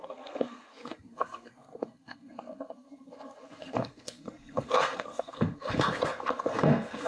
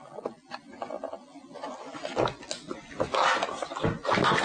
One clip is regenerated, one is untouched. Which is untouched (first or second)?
second